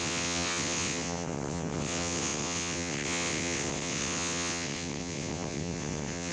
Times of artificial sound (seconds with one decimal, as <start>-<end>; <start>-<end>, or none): 0.0-6.3